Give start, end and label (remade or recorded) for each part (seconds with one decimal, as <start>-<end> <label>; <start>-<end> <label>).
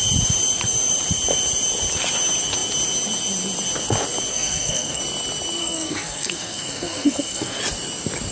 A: 0.0-4.3 recorded; 4.3-5.0 remade; 5.0-5.6 recorded; 5.6-7.6 remade; 7.6-8.3 recorded